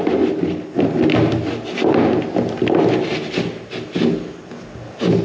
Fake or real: real